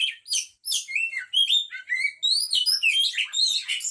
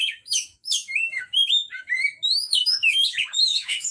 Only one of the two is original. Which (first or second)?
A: first